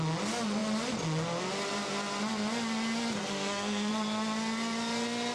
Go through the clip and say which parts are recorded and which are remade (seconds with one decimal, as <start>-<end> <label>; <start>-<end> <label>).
0.0-3.3 recorded; 3.3-3.9 remade; 3.9-5.3 recorded